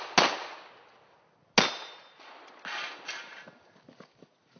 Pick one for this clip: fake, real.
real